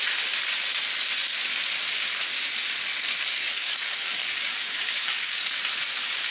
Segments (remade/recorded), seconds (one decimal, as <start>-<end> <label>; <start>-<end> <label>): 0.0-3.3 recorded; 3.3-5.6 remade; 5.6-6.3 recorded